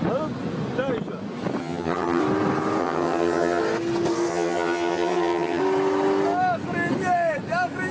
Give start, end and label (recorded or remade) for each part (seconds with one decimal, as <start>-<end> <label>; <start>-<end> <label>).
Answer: 0.0-1.6 recorded; 1.6-2.2 remade; 2.2-2.8 recorded; 2.8-3.6 remade; 3.6-4.3 recorded; 4.3-5.6 remade; 5.6-7.9 recorded